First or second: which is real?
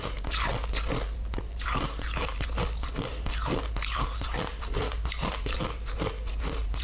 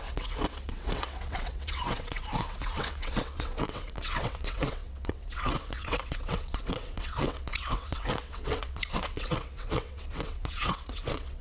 first